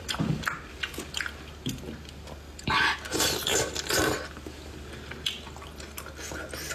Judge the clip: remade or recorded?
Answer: recorded